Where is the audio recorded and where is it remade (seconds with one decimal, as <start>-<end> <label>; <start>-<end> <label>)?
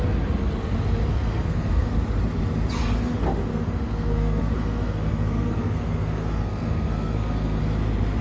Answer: 0.0-1.1 recorded; 1.1-1.9 remade; 1.9-3.5 recorded; 3.5-7.6 remade; 7.6-8.2 recorded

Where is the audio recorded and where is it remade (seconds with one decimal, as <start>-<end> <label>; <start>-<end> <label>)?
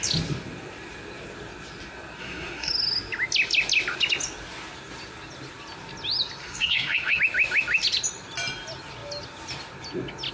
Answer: 0.0-2.2 recorded; 2.2-2.7 remade; 2.7-6.4 recorded; 6.4-7.2 remade; 7.2-10.3 recorded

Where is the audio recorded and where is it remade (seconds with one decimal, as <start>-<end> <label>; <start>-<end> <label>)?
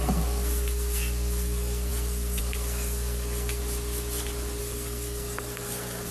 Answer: 0.0-3.6 remade; 3.6-4.6 recorded; 4.6-6.1 remade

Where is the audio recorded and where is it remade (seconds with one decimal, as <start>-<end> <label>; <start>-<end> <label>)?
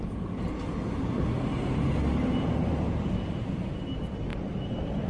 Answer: 0.0-5.1 recorded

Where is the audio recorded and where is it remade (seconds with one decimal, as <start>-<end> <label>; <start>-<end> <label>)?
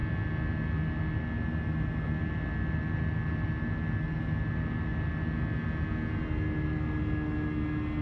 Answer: 0.0-8.0 recorded